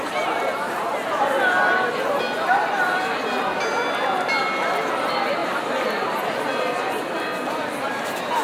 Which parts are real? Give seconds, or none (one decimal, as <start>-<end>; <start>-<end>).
0.0-5.4; 6.8-8.4